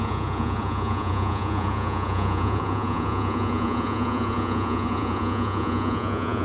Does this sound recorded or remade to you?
remade